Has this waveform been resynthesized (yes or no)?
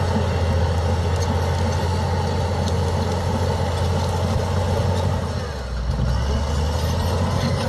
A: no